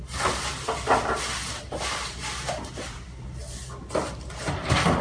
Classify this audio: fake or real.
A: real